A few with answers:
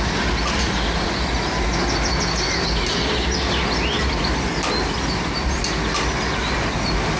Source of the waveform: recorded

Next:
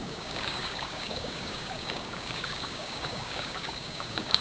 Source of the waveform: remade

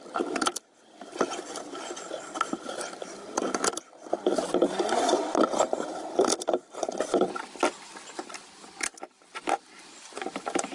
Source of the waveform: recorded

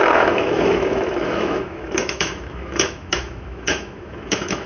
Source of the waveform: remade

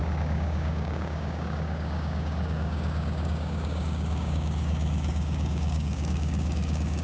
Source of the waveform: remade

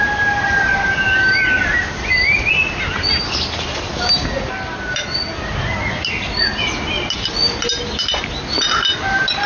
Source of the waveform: recorded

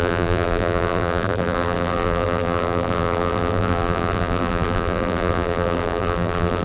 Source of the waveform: remade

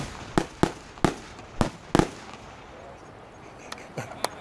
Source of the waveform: recorded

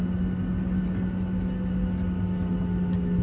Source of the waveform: recorded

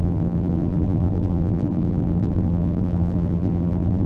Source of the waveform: remade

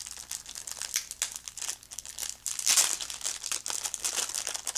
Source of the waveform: recorded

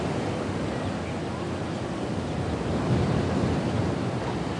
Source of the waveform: recorded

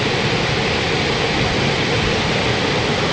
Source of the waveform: recorded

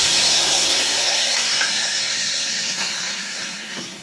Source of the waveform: remade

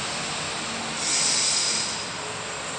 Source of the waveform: recorded